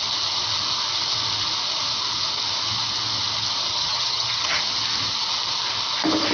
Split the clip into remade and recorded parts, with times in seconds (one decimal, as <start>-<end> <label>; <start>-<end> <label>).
0.0-3.7 recorded; 3.7-4.6 remade; 4.6-6.3 recorded